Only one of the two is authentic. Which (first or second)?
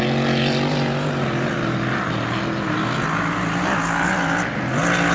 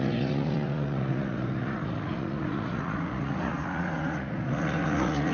first